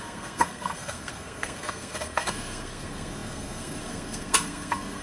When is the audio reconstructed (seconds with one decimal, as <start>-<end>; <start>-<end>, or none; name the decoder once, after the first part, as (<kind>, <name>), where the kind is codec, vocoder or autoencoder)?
0.0-5.0 (codec, SNAC)